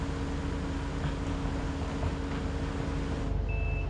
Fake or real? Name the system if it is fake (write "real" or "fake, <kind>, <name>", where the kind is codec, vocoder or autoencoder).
real